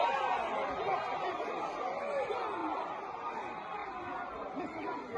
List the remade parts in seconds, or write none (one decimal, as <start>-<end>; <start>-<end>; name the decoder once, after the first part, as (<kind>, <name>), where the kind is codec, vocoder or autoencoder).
none